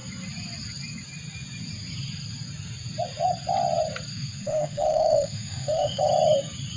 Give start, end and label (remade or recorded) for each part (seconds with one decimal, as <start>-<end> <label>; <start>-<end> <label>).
0.0-4.1 recorded; 4.1-6.0 remade; 6.0-6.8 recorded